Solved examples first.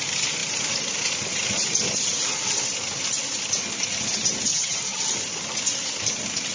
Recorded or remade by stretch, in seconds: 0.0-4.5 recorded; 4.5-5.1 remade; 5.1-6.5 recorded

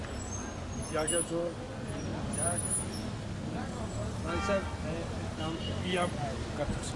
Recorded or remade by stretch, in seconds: 0.0-7.0 recorded

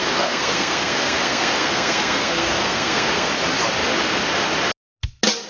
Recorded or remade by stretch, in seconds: 0.0-3.3 remade; 3.3-5.5 recorded

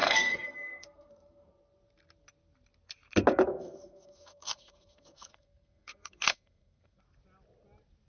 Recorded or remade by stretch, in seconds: 0.0-1.5 remade; 1.5-3.5 recorded; 3.5-7.0 remade; 7.0-8.1 recorded

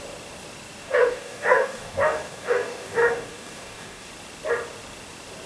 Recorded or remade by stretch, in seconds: 0.0-0.8 recorded; 0.8-4.1 remade; 4.1-5.5 recorded

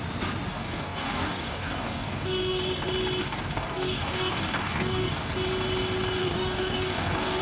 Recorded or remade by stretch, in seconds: 0.0-0.5 recorded; 0.5-2.6 remade; 2.6-3.2 recorded; 3.2-5.3 remade; 5.3-6.2 recorded; 6.2-7.4 remade